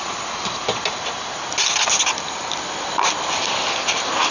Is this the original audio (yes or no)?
yes